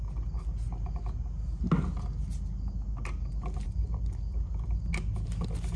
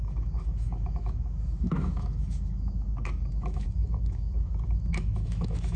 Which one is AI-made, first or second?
second